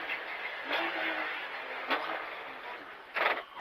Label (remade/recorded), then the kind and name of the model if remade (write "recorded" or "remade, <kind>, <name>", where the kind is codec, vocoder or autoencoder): recorded